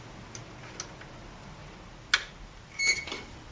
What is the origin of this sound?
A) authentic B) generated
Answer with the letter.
A